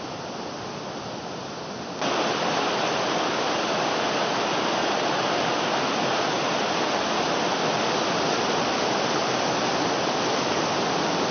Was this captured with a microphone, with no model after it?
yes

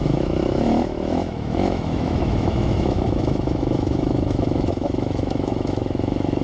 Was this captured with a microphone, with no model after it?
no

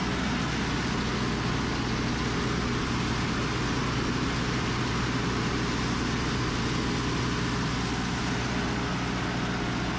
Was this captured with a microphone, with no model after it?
yes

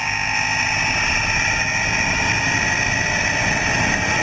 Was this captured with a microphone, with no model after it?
yes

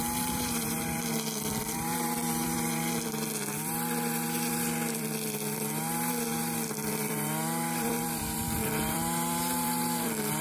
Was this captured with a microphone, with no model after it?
no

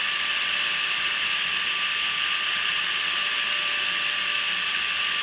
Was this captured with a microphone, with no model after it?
yes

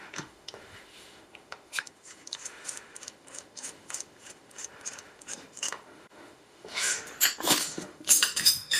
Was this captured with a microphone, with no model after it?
no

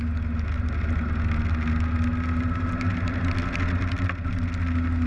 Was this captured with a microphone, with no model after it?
yes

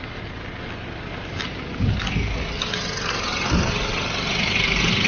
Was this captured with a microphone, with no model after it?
yes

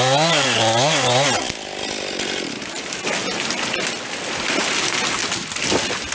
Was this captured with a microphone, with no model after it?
yes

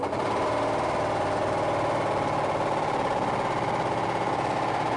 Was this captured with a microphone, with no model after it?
yes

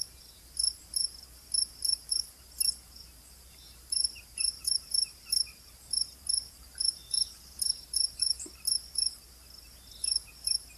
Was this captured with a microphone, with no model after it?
no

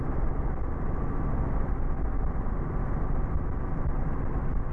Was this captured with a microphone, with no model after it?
yes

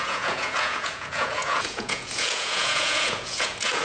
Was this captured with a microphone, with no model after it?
no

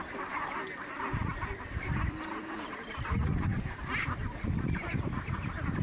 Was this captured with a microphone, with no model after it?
no